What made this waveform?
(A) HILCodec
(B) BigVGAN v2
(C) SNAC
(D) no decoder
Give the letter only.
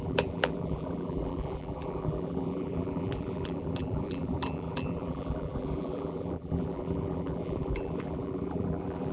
B